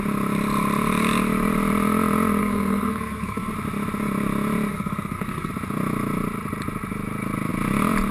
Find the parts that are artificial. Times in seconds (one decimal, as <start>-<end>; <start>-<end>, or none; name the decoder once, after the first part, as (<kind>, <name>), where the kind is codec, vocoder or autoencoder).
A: 2.4-3.5 (codec, SNAC); 4.7-5.5